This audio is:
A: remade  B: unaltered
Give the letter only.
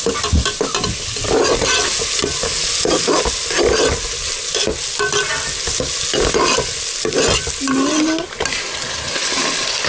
B